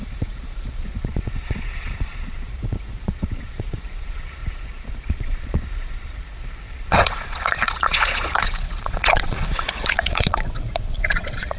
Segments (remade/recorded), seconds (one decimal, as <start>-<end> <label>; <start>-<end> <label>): 0.0-11.6 remade